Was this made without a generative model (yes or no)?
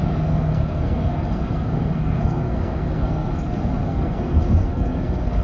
no